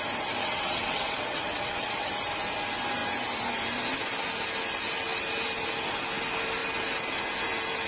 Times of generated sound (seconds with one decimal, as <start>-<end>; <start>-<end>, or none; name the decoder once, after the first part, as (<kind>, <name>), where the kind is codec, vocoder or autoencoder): 0.4-2.1 (vocoder, WaveNeXt)